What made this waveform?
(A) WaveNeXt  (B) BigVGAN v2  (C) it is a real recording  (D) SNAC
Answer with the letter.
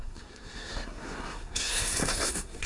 D